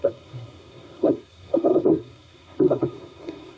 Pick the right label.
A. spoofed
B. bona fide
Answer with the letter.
A